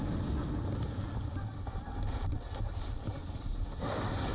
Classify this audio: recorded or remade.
recorded